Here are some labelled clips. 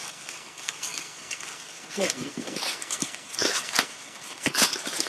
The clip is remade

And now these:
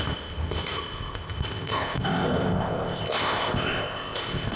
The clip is remade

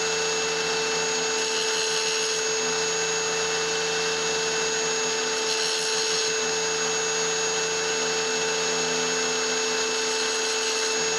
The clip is recorded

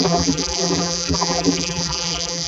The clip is remade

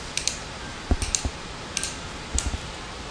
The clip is recorded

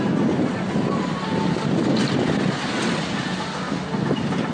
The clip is recorded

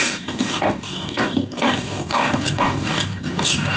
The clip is remade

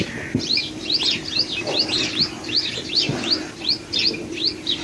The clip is recorded